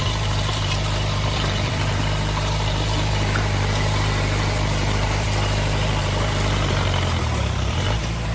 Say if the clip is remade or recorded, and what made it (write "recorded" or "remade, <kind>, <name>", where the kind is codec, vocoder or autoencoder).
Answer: remade, vocoder, BigVGAN v2